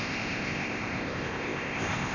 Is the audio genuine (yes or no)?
no